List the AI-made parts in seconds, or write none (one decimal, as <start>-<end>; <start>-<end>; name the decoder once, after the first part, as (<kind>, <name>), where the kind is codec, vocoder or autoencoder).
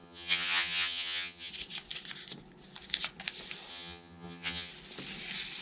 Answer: 0.0-1.5 (vocoder, HiFi-GAN); 3.7-4.7